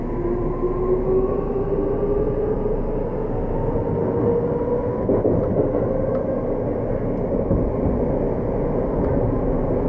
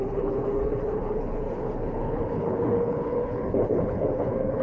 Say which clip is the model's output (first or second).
second